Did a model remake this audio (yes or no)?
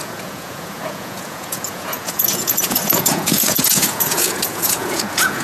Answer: yes